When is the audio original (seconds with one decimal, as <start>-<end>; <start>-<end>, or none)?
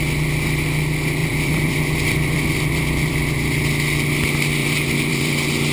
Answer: 0.0-1.2; 3.6-4.6; 5.3-5.7